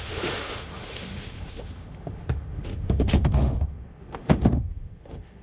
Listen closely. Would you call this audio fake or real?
fake